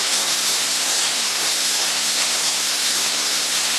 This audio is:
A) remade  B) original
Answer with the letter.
A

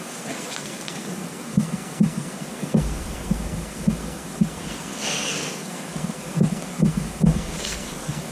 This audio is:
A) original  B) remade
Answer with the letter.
B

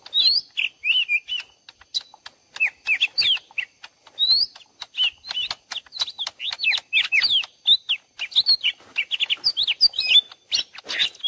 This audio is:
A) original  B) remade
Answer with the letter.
A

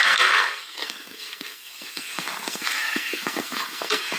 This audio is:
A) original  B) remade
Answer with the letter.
B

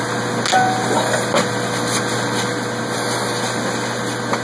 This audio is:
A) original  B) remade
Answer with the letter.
A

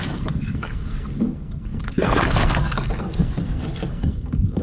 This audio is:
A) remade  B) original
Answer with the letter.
A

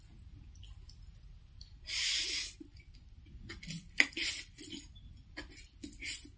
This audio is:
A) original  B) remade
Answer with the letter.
A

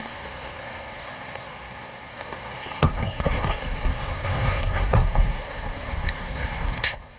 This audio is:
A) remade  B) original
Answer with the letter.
A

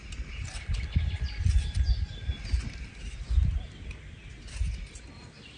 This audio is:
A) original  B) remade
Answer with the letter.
A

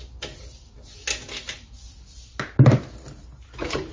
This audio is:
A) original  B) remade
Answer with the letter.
A